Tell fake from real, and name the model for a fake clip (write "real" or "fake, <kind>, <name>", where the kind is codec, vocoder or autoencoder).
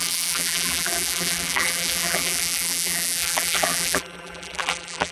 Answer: fake, vocoder, BigVGAN v2